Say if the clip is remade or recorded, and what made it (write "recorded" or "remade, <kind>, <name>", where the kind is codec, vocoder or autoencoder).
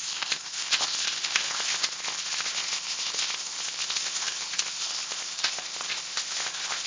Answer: remade, codec, ZipCodec